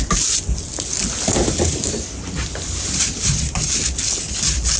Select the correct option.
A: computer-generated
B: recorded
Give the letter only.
B